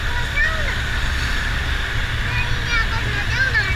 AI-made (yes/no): no